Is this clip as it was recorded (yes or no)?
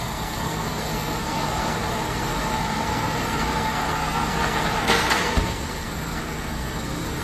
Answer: no